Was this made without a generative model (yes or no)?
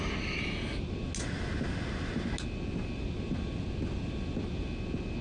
yes